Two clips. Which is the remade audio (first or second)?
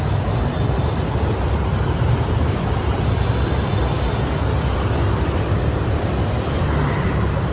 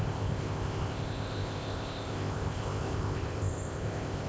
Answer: second